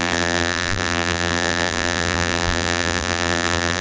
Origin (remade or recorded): remade